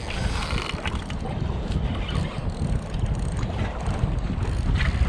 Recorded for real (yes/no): yes